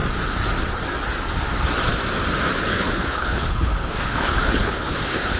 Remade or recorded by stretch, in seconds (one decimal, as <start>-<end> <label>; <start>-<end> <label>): 0.0-2.7 recorded; 2.7-5.4 remade